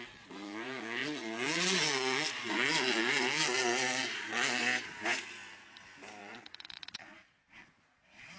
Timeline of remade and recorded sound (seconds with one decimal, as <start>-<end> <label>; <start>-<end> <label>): 0.0-4.6 remade; 4.6-6.2 recorded; 6.2-8.4 remade